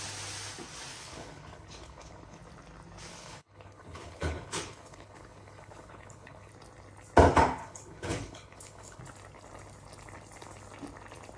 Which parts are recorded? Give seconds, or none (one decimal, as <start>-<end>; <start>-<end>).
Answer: 0.0-0.9; 2.4-3.1; 6.5-7.6; 9.0-11.4